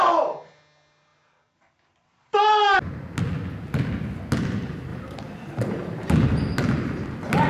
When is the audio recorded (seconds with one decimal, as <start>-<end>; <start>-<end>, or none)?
0.0-4.9; 6.1-7.5